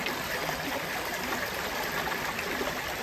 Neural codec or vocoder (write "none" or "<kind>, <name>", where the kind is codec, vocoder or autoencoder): none